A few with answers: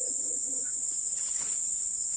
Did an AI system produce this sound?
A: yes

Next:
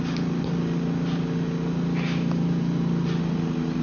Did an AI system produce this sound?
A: no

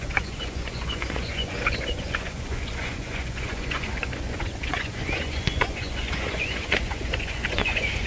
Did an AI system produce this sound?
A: yes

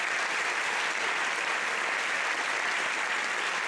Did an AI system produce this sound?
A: no